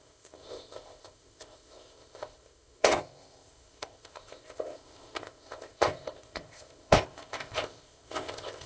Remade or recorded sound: remade